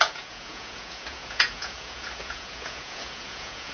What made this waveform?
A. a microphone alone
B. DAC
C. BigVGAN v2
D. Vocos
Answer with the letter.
D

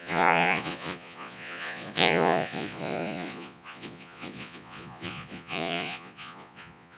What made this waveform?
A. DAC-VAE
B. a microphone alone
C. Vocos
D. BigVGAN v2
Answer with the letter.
C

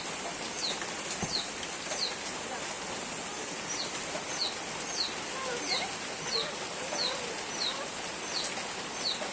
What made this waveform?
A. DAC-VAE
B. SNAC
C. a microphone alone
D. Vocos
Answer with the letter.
C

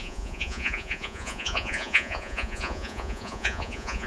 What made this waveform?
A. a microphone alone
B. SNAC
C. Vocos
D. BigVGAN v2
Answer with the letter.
C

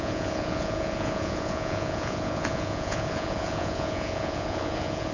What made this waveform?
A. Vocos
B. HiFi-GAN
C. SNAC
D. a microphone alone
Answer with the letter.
A